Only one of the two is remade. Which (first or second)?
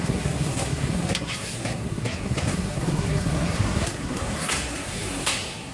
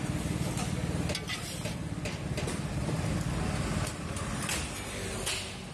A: first